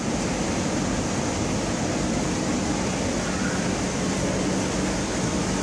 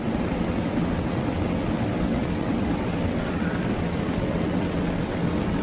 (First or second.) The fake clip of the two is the second